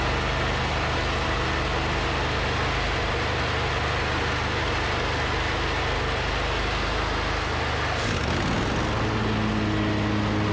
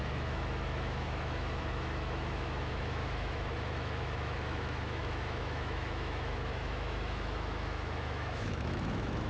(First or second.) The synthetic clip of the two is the second